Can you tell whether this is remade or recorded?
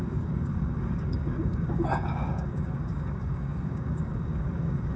remade